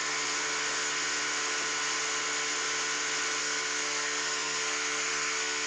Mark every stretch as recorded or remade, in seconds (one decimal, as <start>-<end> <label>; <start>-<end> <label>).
0.0-3.4 recorded; 3.4-5.7 remade